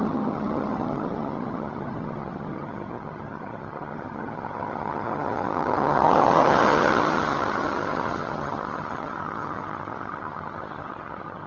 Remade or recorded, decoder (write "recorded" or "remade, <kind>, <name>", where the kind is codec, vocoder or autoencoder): remade, vocoder, HiFi-GAN